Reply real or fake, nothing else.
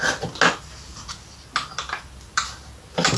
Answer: real